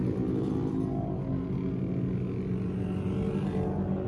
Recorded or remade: recorded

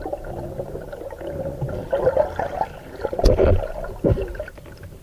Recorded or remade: recorded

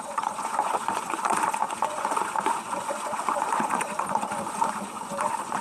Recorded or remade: remade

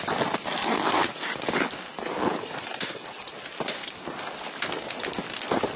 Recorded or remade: recorded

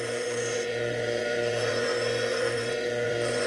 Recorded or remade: remade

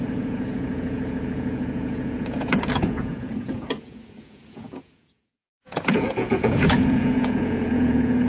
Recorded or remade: remade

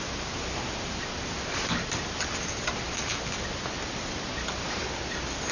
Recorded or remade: recorded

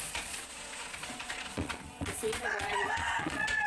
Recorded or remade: remade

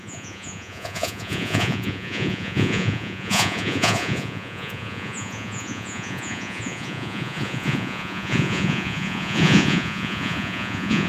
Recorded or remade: remade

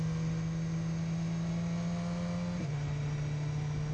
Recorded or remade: recorded